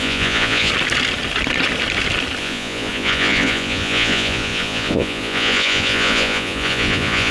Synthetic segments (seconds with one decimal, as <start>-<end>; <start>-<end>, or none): 0.0-0.7; 2.4-7.3